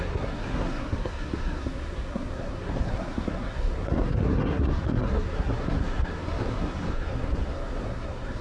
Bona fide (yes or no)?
no